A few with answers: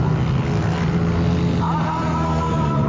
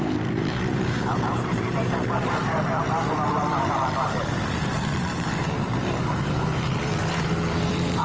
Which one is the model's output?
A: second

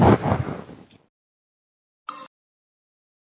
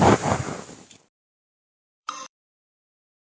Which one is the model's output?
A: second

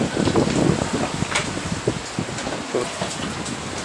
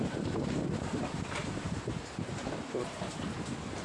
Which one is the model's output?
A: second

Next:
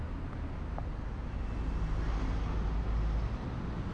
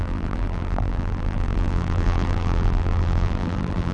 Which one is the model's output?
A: second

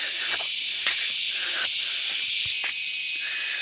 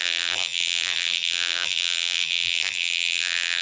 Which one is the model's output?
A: second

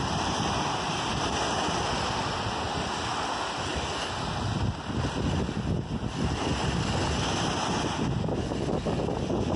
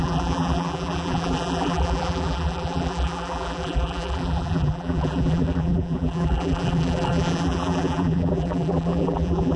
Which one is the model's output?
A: second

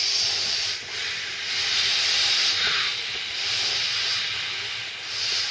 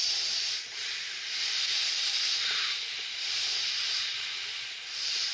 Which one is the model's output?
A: second